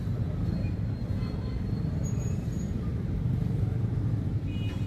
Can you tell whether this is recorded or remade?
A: remade